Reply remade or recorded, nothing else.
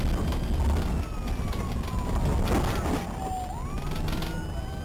recorded